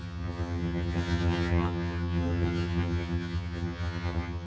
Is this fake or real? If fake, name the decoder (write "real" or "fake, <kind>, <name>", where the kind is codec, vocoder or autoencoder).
fake, vocoder, HiFi-GAN